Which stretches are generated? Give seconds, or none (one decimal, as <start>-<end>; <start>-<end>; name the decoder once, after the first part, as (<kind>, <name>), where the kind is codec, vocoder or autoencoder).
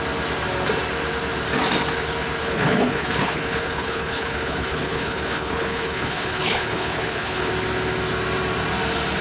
2.4-7.5 (codec, HILCodec)